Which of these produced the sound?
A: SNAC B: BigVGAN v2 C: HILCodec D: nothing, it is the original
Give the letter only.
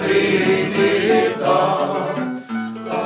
D